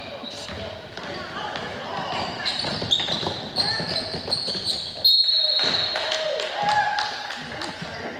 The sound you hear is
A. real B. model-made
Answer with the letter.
A